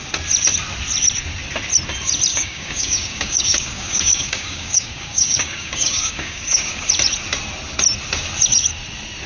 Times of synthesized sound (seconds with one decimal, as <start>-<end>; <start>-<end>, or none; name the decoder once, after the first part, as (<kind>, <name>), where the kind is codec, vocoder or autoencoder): 2.3-6.9 (codec, DAC)